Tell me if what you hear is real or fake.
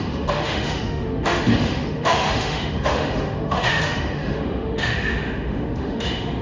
fake